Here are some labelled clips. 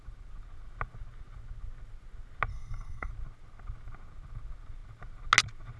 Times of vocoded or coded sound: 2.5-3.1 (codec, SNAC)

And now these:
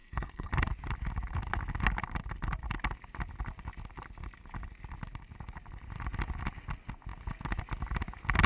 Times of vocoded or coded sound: 0.0-0.5 (codec, SNAC)

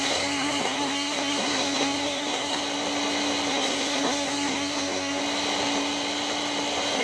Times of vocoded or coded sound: 0.0-2.6 (codec, SNAC); 3.5-5.2

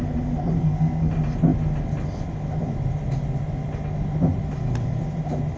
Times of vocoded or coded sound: 0.6-1.1 (codec, SNAC)

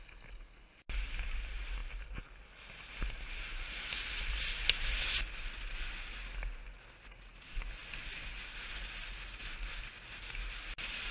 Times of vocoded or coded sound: none

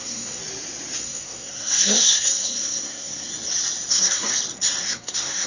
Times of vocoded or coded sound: 0.0-0.4 (codec, SNAC); 1.0-3.3; 3.9-4.3; 4.8-5.5

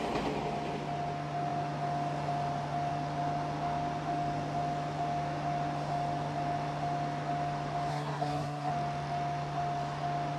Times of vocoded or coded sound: 7.9-8.7 (codec, SNAC)